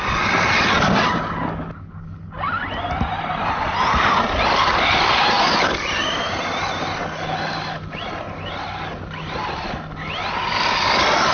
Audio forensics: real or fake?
real